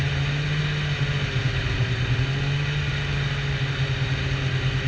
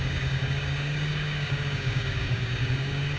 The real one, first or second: first